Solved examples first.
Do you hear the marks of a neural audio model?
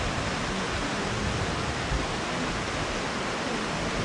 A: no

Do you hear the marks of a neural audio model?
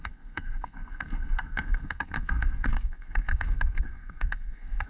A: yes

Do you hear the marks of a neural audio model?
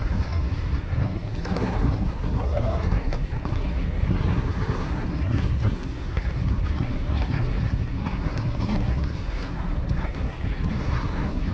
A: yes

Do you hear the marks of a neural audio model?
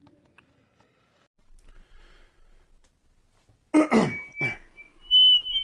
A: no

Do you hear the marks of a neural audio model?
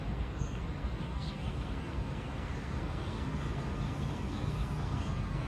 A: yes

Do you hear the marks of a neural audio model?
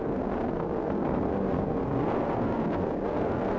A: yes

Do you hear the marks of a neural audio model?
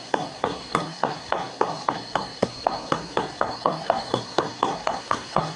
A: yes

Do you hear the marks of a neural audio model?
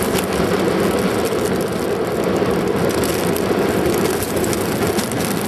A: no